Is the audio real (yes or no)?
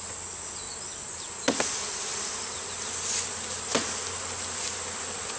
yes